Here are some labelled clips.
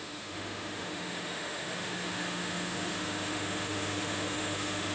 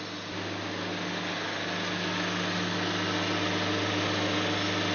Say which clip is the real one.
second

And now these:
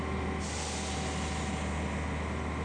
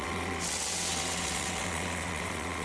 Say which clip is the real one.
first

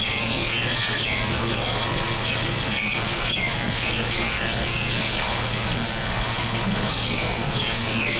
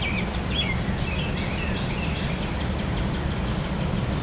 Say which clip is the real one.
second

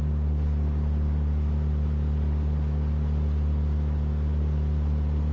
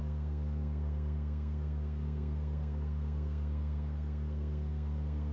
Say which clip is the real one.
first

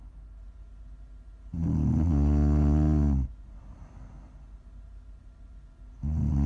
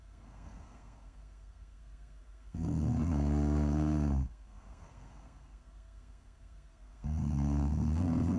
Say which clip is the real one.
first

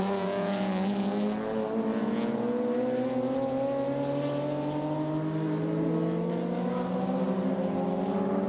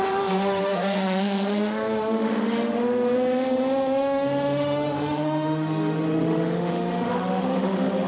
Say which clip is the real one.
first